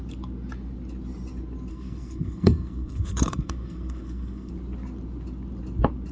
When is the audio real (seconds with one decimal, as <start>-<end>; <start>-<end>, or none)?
0.0-1.7; 4.5-6.1